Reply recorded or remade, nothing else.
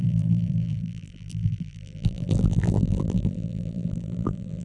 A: remade